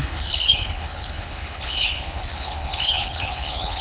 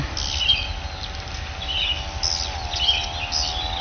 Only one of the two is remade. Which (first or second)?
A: first